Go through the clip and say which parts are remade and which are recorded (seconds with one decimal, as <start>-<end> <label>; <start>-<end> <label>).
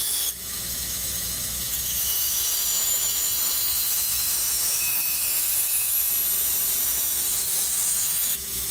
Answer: 0.0-6.1 remade; 6.1-6.8 recorded; 6.8-8.7 remade